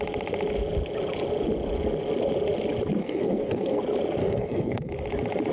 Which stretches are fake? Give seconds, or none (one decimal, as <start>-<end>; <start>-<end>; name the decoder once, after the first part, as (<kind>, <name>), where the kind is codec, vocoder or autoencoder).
3.0-3.8 (codec, SNAC); 4.2-4.9